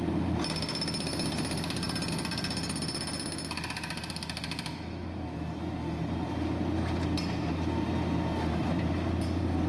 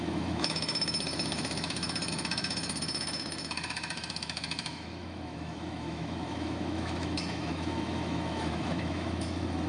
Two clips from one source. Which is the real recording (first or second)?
first